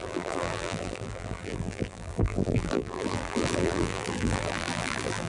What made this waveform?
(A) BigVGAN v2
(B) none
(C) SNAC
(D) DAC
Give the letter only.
A